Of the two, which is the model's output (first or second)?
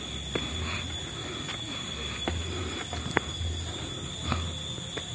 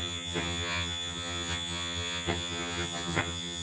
second